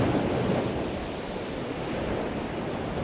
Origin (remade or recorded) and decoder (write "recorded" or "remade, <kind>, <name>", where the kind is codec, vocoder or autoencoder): recorded